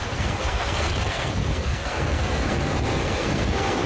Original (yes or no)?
no